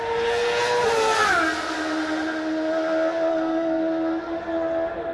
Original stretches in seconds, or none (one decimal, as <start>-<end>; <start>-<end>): 0.0-3.3; 3.8-5.1